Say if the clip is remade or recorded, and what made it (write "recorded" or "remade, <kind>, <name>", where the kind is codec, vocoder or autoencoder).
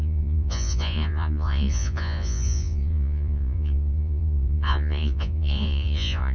remade, vocoder, Vocos